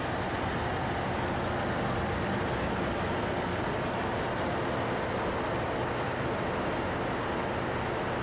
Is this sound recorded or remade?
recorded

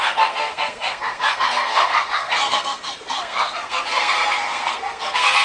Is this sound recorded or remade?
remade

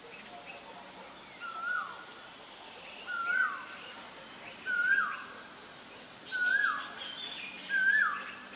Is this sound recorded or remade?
recorded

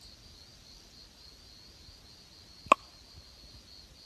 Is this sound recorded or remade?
recorded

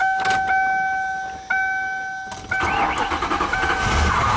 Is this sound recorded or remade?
recorded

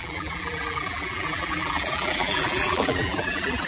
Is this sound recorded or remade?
remade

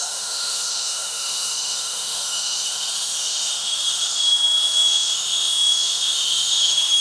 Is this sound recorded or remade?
remade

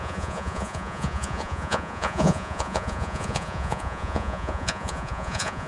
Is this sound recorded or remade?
remade